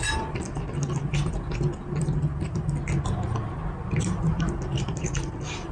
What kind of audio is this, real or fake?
real